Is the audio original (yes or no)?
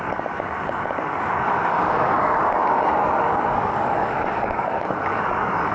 no